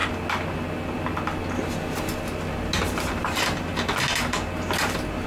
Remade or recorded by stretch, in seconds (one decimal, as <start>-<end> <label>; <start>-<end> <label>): 0.0-3.2 recorded; 3.2-3.7 remade; 3.7-5.3 recorded